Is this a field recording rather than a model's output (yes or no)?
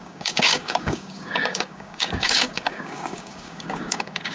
no